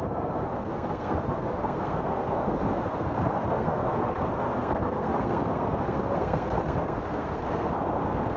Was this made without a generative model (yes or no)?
no